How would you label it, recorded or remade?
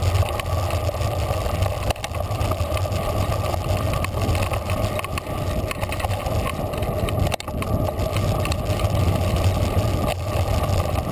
recorded